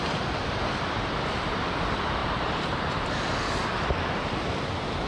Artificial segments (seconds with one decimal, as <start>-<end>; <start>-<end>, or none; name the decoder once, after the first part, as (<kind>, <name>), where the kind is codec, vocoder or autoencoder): 0.4-1.7 (vocoder, BigVGAN v2); 2.2-2.9; 3.7-4.5